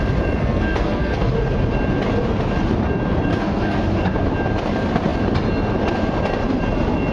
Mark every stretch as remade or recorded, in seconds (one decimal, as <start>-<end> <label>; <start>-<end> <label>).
0.0-0.4 recorded; 0.4-1.3 remade; 1.3-3.3 recorded; 3.3-3.8 remade; 3.8-7.1 recorded